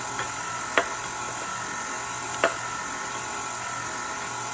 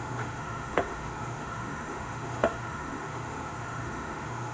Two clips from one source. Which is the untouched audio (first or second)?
first